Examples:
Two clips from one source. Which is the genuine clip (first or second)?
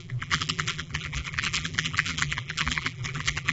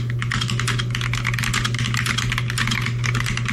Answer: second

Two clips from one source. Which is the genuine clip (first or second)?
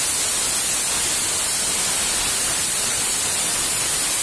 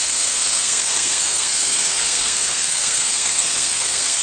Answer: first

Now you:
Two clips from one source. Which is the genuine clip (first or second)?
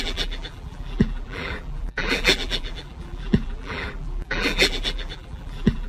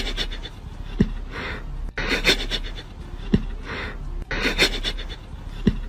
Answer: second